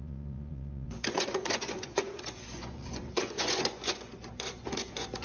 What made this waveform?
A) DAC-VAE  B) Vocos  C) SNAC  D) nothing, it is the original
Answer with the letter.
B